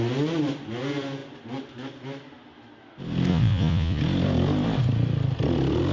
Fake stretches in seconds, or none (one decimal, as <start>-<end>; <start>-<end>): 3.3-4.0